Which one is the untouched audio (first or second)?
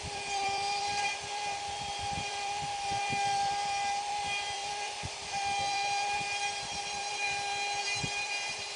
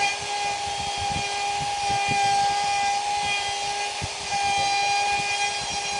second